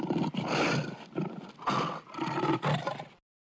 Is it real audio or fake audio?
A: real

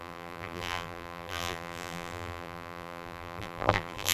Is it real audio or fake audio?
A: fake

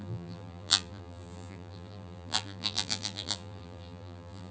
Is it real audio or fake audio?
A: fake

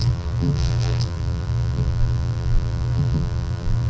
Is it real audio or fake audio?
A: fake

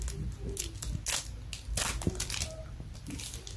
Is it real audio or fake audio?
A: real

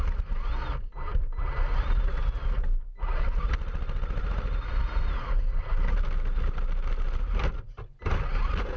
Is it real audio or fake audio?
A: real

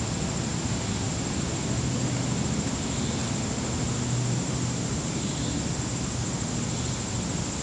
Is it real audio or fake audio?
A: real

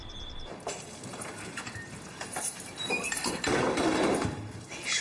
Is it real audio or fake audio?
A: fake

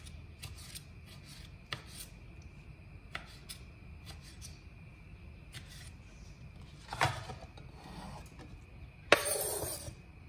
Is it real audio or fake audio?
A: real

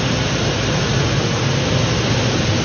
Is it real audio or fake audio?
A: real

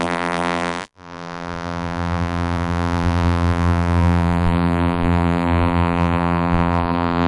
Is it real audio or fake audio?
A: fake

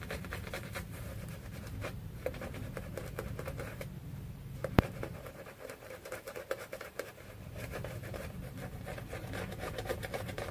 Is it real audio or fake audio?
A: fake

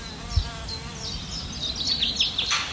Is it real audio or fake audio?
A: real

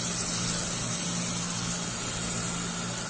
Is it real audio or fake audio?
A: real